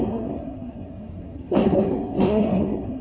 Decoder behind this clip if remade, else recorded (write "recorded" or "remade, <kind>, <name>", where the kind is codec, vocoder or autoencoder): remade, codec, SNAC